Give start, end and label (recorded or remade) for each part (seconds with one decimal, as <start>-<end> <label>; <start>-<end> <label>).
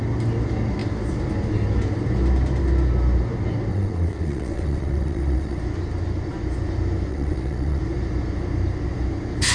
0.0-3.7 recorded; 3.7-5.6 remade; 5.6-7.1 recorded; 7.1-7.8 remade; 7.8-9.5 recorded